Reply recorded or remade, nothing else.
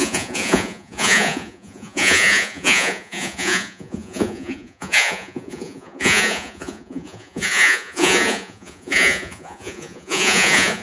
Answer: remade